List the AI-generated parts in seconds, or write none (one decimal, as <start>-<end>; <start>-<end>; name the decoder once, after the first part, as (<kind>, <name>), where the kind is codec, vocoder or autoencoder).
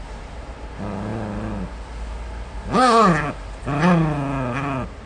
none